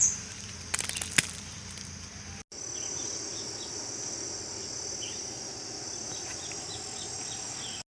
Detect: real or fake real